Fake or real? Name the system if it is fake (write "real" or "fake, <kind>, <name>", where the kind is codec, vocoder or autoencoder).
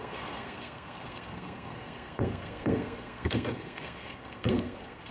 fake, codec, SNAC